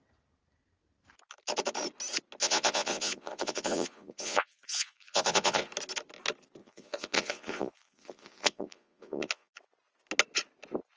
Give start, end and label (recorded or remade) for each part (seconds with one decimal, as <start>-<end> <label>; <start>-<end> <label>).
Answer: 0.0-2.4 recorded; 2.4-5.7 remade; 5.7-6.6 recorded; 6.6-9.6 remade; 9.6-11.0 recorded